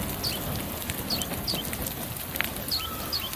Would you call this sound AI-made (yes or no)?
no